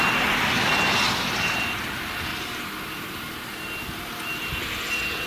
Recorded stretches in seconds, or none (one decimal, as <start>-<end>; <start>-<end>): 0.0-2.3; 4.6-5.3